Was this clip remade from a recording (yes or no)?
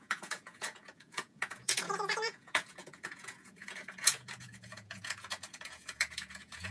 yes